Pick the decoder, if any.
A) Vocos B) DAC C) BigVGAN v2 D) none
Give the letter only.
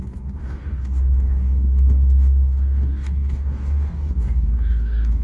B